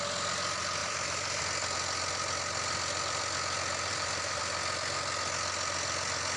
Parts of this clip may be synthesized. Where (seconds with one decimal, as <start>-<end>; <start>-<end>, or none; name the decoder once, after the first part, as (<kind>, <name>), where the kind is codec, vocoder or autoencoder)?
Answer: 0.8-1.4 (vocoder, BigVGAN v2); 3.9-4.4